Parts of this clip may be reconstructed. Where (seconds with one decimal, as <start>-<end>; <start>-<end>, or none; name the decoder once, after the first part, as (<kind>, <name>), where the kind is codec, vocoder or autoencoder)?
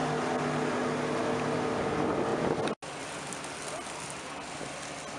none